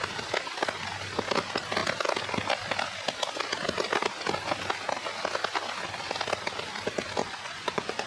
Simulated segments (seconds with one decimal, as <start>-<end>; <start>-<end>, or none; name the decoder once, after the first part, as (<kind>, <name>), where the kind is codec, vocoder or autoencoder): 7.2-8.1 (vocoder, Vocos)